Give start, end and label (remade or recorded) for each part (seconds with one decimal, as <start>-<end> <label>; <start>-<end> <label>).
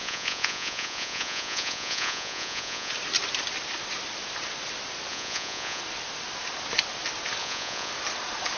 0.0-2.9 remade; 2.9-5.1 recorded; 5.1-5.8 remade; 5.8-7.4 recorded; 7.4-7.9 remade; 7.9-8.6 recorded